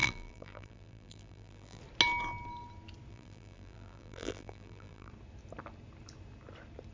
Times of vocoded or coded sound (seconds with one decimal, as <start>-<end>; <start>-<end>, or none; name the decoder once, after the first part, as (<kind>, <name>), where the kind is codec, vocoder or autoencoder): 0.0-1.8 (vocoder, BigVGAN v2); 3.1-5.1